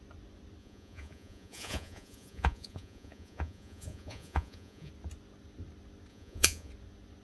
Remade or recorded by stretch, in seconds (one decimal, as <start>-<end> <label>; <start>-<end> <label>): 0.0-0.6 recorded; 0.6-4.9 remade; 4.9-6.1 recorded; 6.1-6.7 remade; 6.7-7.2 recorded